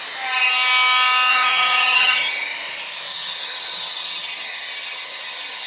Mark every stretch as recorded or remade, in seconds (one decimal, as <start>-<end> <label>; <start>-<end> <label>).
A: 0.0-1.3 recorded; 1.3-2.3 remade; 2.3-3.1 recorded; 3.1-5.7 remade

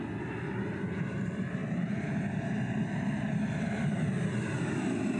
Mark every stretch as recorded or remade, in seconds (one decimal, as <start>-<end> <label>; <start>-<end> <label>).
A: 0.0-5.2 recorded

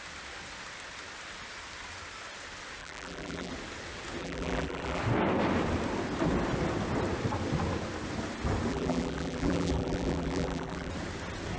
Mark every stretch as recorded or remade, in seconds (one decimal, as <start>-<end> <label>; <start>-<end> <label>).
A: 0.0-2.8 recorded; 2.8-3.5 remade; 3.5-4.2 recorded; 4.2-5.0 remade; 5.0-8.7 recorded; 8.7-10.9 remade; 10.9-11.6 recorded

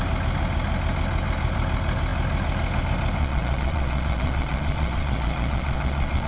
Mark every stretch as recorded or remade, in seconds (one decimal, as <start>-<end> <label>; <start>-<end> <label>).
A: 0.0-3.2 recorded; 3.2-6.3 remade

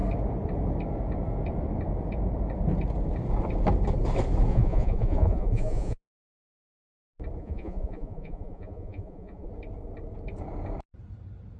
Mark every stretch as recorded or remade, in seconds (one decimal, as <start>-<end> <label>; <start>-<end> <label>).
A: 0.0-4.5 recorded; 4.5-6.1 remade; 6.1-7.4 recorded; 7.4-9.5 remade; 9.5-11.6 recorded

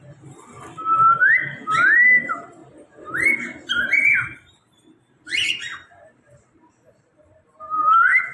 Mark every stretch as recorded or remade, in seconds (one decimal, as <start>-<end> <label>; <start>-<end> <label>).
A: 0.0-2.6 recorded; 2.6-7.5 remade; 7.5-8.3 recorded